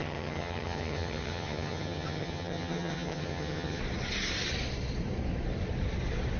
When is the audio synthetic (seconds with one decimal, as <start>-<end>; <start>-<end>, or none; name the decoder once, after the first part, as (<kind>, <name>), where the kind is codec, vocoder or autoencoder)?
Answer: 0.0-3.8 (vocoder, HiFi-GAN)